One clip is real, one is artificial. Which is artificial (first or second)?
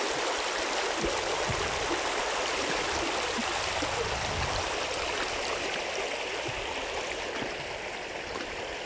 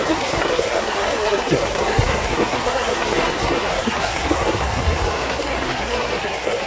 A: second